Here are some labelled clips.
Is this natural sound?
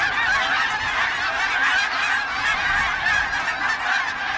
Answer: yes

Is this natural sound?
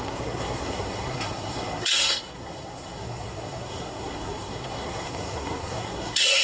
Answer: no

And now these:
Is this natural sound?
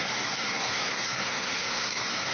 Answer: no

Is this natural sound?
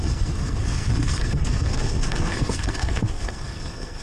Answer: no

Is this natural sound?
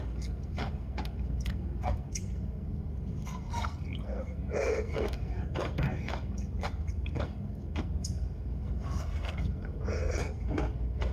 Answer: no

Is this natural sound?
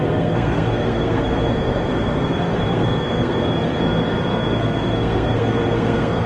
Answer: no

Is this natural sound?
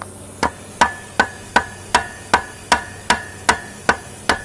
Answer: yes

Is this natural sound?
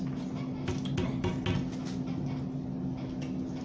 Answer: yes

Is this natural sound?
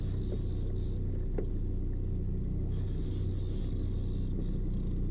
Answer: yes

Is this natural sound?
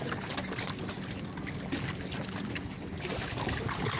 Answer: yes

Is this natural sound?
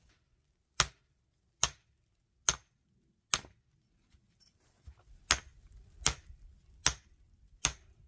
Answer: yes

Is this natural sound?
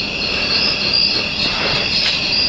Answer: yes